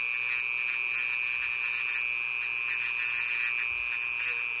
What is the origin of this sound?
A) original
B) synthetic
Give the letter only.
A